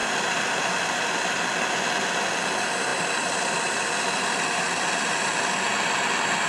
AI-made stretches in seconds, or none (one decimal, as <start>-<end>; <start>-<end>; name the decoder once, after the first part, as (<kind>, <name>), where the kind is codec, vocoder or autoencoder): 0.0-1.3 (vocoder, BigVGAN v2); 2.9-5.9